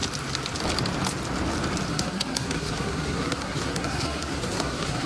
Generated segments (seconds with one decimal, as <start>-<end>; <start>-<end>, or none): 1.9-5.1